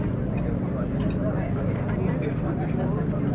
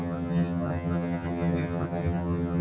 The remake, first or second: second